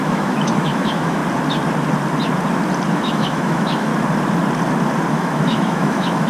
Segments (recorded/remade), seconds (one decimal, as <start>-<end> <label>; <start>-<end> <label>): 0.0-1.2 remade; 1.2-2.9 recorded; 2.9-3.9 remade; 3.9-5.1 recorded; 5.1-6.3 remade